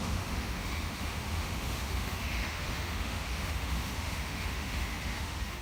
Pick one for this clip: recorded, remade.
remade